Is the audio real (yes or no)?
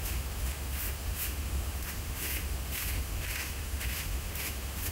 no